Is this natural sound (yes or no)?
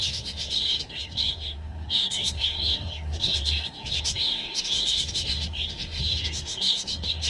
no